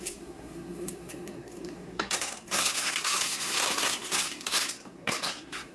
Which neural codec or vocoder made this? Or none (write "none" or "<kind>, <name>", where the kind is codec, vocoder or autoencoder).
codec, SNAC